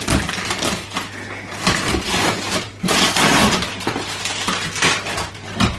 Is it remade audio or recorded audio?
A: recorded